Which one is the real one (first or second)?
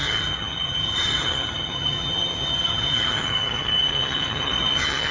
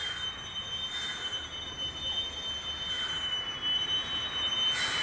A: second